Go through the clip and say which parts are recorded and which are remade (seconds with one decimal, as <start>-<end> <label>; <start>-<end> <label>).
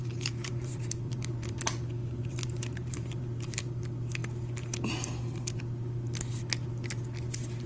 0.0-1.6 remade; 1.6-2.0 recorded; 2.0-3.8 remade; 3.8-7.7 recorded